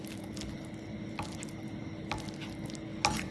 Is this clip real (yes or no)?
yes